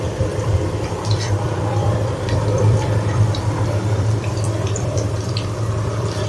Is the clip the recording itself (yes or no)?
no